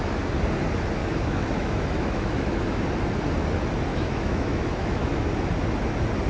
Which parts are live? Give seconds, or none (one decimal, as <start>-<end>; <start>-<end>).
0.0-1.0; 2.8-3.9; 5.3-6.3